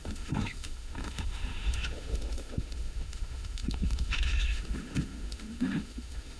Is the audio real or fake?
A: fake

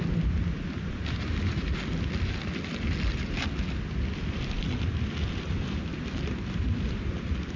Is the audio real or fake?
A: real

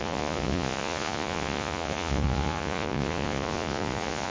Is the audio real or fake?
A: fake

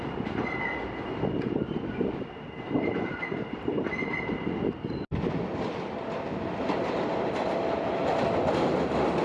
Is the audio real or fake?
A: real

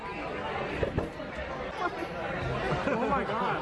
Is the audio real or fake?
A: real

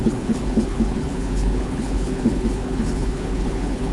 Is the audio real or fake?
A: fake